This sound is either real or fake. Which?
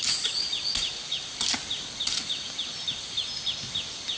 real